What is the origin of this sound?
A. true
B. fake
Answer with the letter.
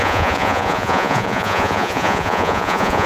B